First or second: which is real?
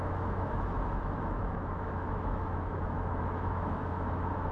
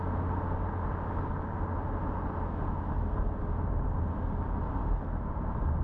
second